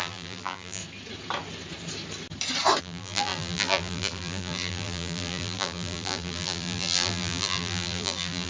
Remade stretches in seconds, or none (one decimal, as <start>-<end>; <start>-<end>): 0.0-0.8; 2.8-8.5